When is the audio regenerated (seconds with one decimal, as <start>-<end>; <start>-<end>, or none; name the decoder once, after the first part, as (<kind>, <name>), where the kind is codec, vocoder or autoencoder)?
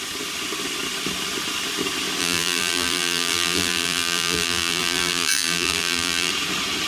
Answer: 2.2-6.3 (vocoder, BigVGAN v2)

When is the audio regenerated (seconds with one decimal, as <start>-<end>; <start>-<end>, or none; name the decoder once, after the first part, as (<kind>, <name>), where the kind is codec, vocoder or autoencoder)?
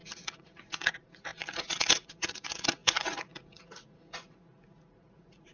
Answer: 0.0-5.5 (vocoder, Vocos)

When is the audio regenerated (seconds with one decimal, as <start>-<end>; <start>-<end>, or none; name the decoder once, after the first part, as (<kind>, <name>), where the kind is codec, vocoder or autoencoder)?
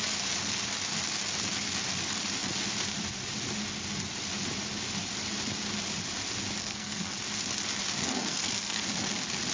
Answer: 6.6-7.2 (codec, SNAC); 8.0-8.8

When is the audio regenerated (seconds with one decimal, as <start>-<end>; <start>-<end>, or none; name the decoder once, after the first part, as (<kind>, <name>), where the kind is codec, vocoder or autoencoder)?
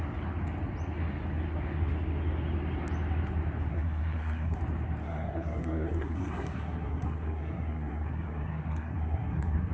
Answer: 3.7-4.6 (codec, SNAC); 5.0-9.7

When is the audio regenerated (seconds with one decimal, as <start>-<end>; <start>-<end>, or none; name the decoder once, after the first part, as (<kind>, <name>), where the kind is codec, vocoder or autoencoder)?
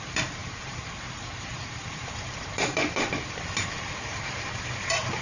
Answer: 0.0-5.2 (vocoder, BigVGAN v2)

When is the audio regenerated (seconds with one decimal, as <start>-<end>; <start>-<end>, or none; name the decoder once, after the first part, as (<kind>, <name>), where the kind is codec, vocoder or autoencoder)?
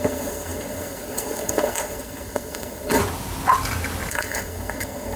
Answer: 0.0-3.0 (codec, SNAC); 4.1-5.2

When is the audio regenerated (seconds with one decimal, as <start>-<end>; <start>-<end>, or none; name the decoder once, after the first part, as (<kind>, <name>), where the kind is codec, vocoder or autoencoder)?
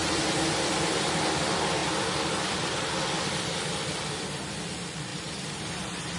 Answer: 0.0-1.2 (vocoder, BigVGAN v2); 5.1-5.7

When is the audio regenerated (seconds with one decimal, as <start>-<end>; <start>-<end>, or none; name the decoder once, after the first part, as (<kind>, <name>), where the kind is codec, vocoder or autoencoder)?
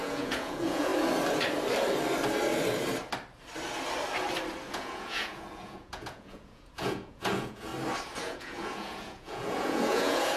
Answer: 0.0-0.9 (vocoder, Vocos); 4.7-7.7; 8.2-10.4